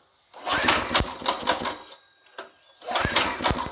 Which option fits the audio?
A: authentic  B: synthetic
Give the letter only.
A